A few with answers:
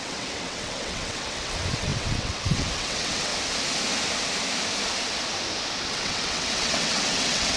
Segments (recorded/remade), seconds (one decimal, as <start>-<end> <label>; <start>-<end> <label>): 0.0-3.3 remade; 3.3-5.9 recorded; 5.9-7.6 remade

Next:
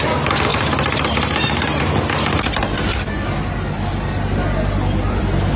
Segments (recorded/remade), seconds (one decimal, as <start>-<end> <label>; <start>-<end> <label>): 0.0-5.6 recorded

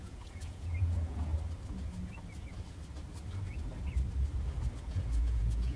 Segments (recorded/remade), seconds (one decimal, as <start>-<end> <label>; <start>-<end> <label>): 0.0-1.3 remade; 1.3-4.8 recorded; 4.8-5.8 remade

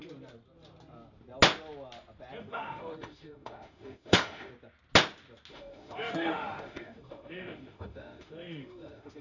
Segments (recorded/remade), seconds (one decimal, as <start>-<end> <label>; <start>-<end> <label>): 0.0-2.4 recorded; 2.4-4.5 remade; 4.5-5.5 recorded; 5.5-9.2 remade

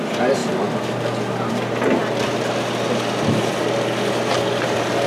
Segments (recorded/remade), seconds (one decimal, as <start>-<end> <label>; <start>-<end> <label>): 0.0-5.1 recorded